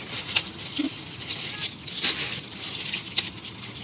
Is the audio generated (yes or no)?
no